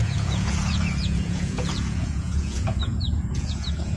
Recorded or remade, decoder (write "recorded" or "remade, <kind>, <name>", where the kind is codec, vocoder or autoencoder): remade, vocoder, Vocos